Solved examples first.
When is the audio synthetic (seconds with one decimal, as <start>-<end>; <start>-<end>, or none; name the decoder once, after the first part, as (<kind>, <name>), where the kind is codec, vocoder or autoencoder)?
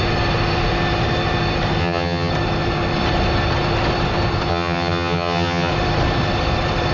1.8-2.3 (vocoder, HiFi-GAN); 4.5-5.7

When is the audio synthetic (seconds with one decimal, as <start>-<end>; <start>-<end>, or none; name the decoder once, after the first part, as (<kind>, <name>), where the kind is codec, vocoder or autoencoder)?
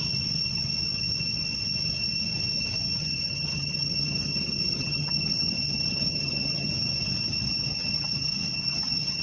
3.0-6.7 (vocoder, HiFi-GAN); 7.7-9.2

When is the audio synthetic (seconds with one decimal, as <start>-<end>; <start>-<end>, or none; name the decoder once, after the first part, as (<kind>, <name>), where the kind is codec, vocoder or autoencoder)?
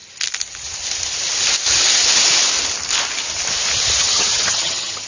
4.0-5.1 (vocoder, HiFi-GAN)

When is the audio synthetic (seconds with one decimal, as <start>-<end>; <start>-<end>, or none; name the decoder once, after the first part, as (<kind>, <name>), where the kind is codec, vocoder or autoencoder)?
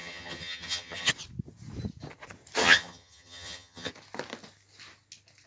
0.0-1.1 (vocoder, HiFi-GAN); 2.6-3.9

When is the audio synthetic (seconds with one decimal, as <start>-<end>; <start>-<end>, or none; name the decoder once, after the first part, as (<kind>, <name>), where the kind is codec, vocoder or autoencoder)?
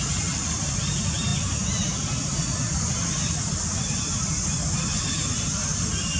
none